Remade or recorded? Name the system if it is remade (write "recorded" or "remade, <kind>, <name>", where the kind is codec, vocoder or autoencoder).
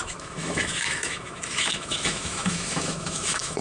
remade, autoencoder, DAC-VAE